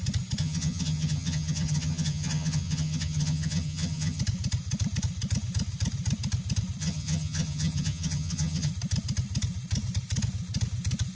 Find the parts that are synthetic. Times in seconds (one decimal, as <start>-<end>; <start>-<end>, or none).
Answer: 0.4-4.2; 6.8-8.7